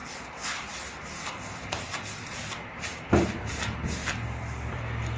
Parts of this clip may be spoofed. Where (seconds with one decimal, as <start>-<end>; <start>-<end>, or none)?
0.0-2.3; 4.0-4.8